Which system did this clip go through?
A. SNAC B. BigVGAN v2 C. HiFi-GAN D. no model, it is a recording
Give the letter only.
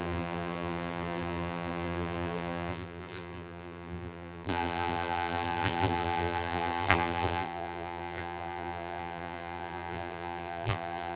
B